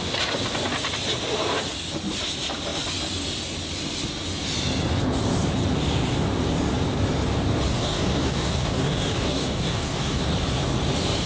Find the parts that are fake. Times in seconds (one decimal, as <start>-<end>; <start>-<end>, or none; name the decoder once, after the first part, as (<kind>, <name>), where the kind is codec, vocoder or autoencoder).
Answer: 7.7-10.2 (codec, DAC)